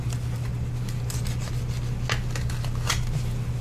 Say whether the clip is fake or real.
real